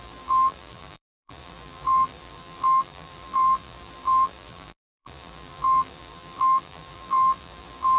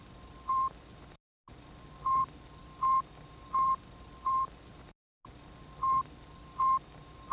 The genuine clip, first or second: second